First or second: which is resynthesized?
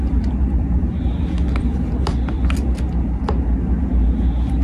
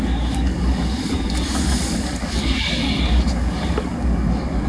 second